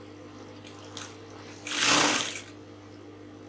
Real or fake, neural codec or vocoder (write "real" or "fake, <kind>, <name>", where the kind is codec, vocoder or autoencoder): real